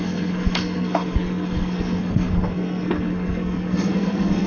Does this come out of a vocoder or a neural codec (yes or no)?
yes